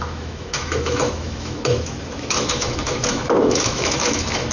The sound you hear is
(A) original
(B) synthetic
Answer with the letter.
B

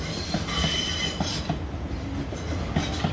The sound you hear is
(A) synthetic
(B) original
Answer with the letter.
B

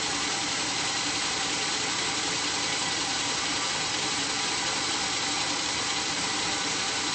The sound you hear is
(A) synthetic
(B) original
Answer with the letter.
A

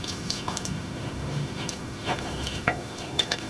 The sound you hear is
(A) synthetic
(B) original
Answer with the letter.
A